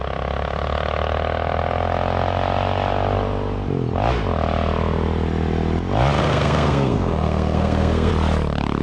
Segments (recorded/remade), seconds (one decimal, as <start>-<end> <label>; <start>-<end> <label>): 0.0-6.2 recorded; 6.2-8.1 remade; 8.1-8.8 recorded